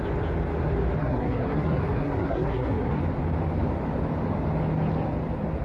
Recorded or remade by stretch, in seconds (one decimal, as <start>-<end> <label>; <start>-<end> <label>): 0.0-1.0 recorded; 1.0-3.0 remade; 3.0-5.6 recorded